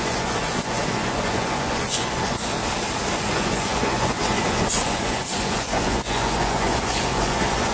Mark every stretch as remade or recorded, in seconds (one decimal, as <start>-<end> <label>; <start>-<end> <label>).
0.0-2.6 remade; 2.6-3.2 recorded; 3.2-7.7 remade